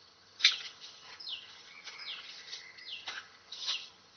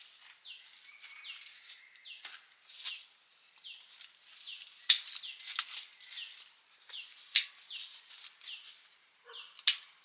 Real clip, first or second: second